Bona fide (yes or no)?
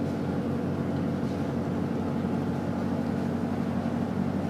yes